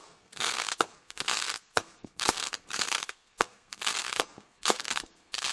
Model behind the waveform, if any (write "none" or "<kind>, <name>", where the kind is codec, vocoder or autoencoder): codec, SNAC